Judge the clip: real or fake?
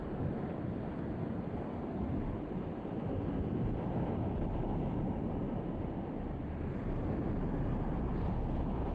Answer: real